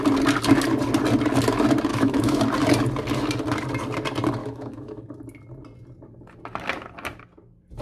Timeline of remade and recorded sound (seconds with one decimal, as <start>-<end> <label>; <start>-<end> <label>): 0.0-1.9 recorded; 1.9-2.4 remade; 2.4-4.4 recorded; 4.4-5.0 remade; 5.0-7.8 recorded